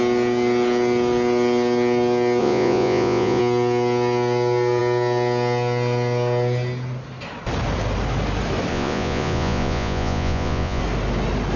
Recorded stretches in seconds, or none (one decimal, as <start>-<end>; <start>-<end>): 0.0-2.4; 3.4-8.7; 10.8-11.6